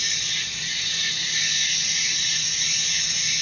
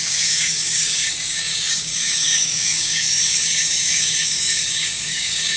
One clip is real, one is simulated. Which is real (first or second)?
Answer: first